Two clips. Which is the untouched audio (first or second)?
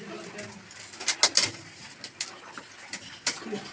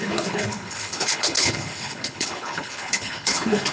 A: first